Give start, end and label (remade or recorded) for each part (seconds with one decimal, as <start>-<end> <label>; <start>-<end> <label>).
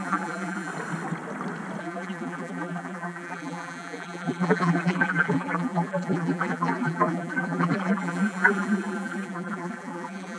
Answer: 0.0-0.7 remade; 0.7-1.8 recorded; 1.8-10.4 remade